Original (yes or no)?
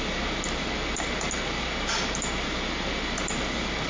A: yes